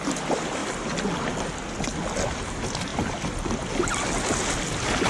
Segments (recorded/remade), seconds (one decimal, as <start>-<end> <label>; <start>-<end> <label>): 0.0-2.9 recorded; 2.9-3.7 remade; 3.7-5.1 recorded